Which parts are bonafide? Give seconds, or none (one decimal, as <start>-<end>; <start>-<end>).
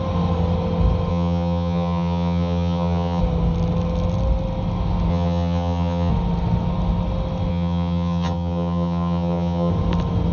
0.0-1.1; 3.2-5.1; 6.1-7.5; 9.7-10.3